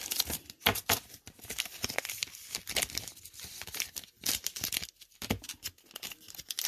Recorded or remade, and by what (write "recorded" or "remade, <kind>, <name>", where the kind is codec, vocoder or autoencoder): recorded